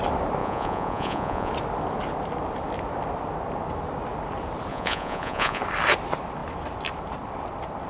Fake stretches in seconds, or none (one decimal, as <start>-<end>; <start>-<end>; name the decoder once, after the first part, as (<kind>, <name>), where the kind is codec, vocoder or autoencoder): 0.4-1.5 (vocoder, Vocos); 4.7-5.6